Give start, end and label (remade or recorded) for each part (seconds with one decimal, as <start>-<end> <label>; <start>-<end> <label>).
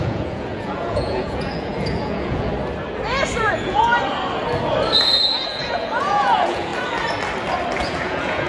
0.0-2.5 remade; 2.5-3.5 recorded; 3.5-3.9 remade; 3.9-5.0 recorded; 5.0-6.7 remade; 6.7-7.8 recorded; 7.8-8.5 remade